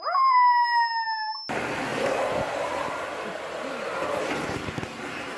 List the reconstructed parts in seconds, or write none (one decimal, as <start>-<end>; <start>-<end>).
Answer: 1.9-5.4